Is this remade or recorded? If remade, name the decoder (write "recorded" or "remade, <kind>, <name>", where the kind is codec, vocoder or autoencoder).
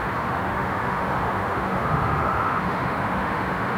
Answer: remade, autoencoder, DAC-VAE